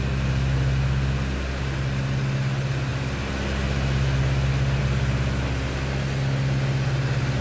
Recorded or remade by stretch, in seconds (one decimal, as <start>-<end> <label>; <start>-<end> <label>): 0.0-7.4 recorded